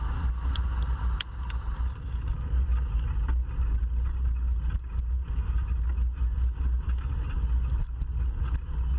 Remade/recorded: recorded